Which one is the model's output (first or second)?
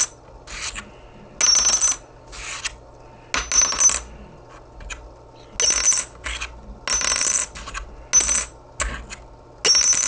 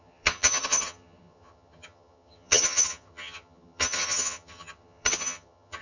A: second